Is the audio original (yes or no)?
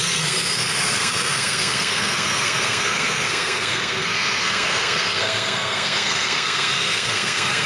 no